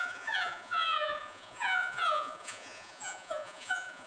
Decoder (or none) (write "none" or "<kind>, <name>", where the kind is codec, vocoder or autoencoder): vocoder, Vocos